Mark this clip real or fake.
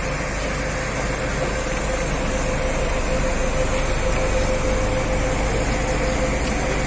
real